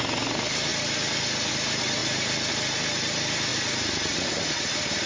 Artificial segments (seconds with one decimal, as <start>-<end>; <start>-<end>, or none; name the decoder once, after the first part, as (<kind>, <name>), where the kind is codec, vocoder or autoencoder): none